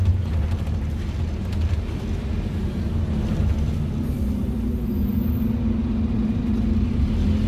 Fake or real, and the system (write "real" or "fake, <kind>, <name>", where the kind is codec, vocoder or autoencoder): real